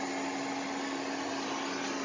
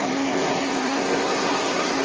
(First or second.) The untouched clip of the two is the first